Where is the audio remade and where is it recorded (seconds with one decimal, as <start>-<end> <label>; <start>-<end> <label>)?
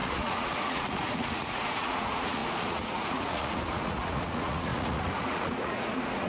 0.0-6.3 remade